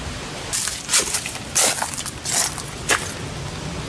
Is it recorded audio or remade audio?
recorded